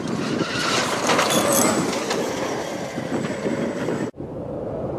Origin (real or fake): real